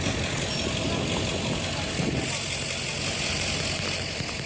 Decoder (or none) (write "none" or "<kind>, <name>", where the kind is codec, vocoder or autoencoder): none